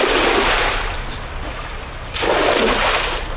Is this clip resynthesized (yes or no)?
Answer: no